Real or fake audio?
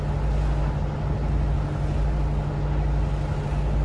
real